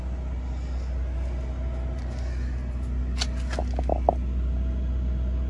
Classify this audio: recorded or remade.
recorded